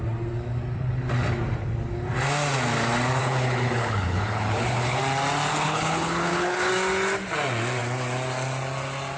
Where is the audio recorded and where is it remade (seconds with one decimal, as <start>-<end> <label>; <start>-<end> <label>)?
0.0-3.2 recorded; 3.2-5.0 remade; 5.0-5.5 recorded; 5.5-6.7 remade; 6.7-9.2 recorded